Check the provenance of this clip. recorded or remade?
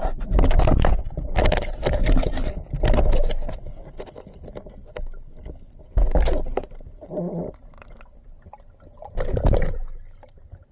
recorded